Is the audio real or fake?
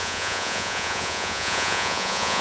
fake